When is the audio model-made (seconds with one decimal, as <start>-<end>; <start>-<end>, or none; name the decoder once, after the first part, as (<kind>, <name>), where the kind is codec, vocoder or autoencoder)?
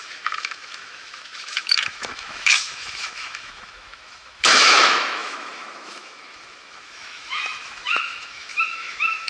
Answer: 0.0-9.3 (autoencoder, DAC-VAE)